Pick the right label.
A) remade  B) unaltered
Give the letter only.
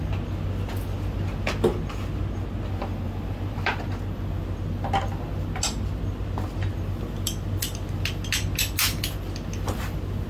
B